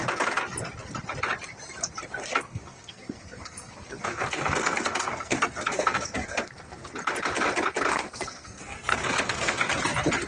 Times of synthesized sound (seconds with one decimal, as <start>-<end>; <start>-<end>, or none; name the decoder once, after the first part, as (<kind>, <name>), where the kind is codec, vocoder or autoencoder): 2.3-6.9 (codec, SNAC); 7.9-9.7